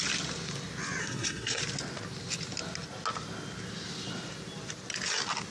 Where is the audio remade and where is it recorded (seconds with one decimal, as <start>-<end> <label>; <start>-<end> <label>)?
0.0-1.0 recorded; 1.0-1.6 remade; 1.6-5.5 recorded